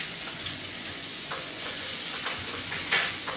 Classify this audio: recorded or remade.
remade